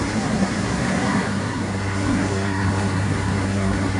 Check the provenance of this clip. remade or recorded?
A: remade